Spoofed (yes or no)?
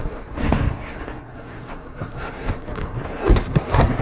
yes